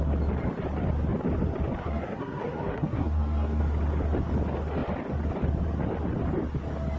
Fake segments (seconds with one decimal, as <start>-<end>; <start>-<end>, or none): 1.8-3.6